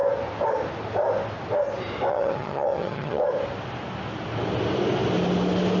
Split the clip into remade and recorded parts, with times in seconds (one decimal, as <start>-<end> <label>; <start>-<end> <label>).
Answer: 0.0-2.1 recorded; 2.1-3.2 remade; 3.2-5.8 recorded